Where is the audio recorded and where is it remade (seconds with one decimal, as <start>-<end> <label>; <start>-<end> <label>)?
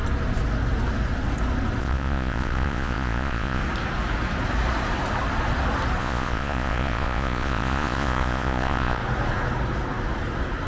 0.0-1.8 recorded; 1.8-3.6 remade; 3.6-6.0 recorded; 6.0-9.0 remade; 9.0-10.7 recorded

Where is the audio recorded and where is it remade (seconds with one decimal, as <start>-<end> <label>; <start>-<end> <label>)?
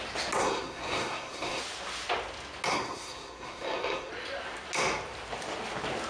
0.0-0.4 recorded; 0.4-1.6 remade; 1.6-2.7 recorded; 2.7-4.1 remade; 4.1-6.1 recorded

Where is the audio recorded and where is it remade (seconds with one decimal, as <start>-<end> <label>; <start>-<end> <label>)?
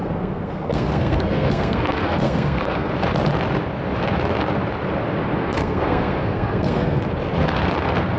0.0-2.9 remade; 2.9-5.4 recorded; 5.4-7.0 remade; 7.0-8.2 recorded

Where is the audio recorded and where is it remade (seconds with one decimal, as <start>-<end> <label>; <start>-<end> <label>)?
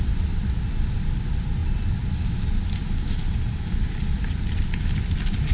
0.0-5.5 recorded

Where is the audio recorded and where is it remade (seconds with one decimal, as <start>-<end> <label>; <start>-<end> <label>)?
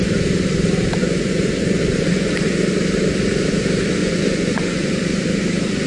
0.0-1.0 recorded; 1.0-2.3 remade; 2.3-4.0 recorded; 4.0-4.9 remade; 4.9-5.9 recorded